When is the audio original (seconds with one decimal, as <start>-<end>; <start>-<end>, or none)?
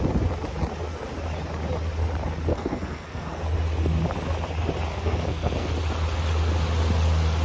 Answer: 0.0-2.5; 3.4-4.9; 5.7-7.4